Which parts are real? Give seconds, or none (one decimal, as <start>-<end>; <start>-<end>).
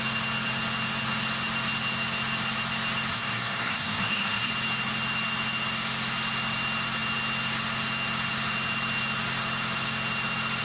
0.0-3.1; 4.5-10.6